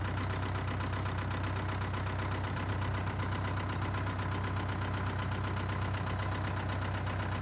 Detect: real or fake real